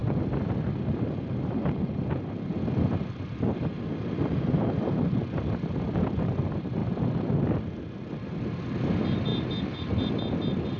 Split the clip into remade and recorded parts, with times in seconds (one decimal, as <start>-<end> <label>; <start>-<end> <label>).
0.0-10.8 recorded